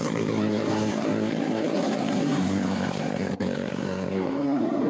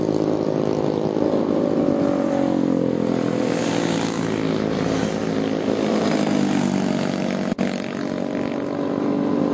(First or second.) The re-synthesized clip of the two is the first